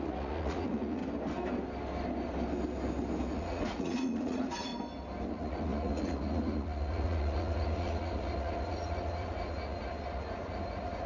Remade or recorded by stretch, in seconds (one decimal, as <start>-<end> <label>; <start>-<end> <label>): 0.0-1.0 remade; 1.0-3.3 recorded; 3.3-4.7 remade; 4.7-5.3 recorded; 5.3-11.1 remade